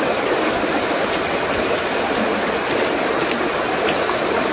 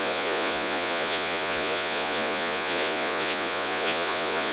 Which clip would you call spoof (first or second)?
second